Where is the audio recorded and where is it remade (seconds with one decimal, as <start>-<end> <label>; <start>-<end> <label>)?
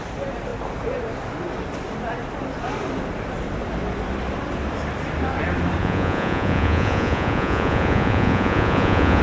0.0-5.8 recorded; 5.8-9.2 remade